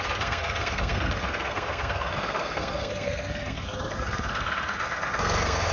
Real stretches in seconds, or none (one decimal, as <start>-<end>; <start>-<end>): none

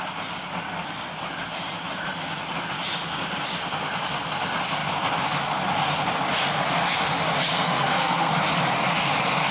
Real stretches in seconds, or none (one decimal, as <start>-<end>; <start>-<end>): 0.0-7.5; 8.3-9.5